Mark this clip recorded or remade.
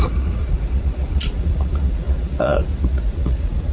remade